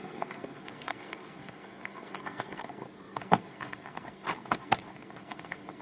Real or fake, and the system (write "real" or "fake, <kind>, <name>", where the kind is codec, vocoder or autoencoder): fake, codec, SNAC